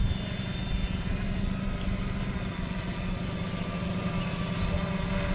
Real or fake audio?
real